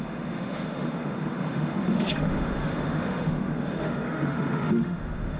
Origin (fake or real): fake